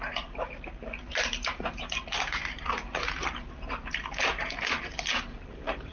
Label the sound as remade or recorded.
remade